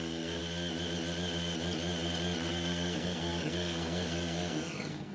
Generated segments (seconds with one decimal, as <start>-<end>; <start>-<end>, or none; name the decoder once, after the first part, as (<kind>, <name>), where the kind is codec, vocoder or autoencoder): 0.0-0.4 (codec, SNAC); 2.5-5.1